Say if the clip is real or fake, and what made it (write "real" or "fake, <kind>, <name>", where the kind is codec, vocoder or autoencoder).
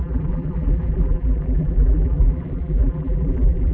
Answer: fake, vocoder, BigVGAN v2